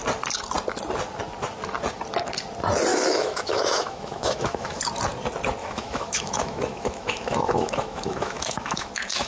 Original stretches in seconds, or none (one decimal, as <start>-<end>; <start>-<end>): 0.0-2.9; 4.8-5.6